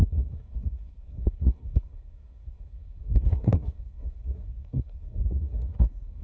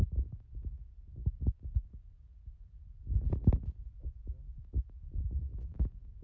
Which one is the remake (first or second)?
first